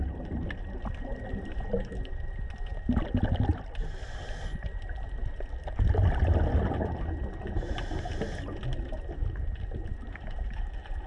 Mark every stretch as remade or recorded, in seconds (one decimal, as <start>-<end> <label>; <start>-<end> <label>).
0.0-11.1 recorded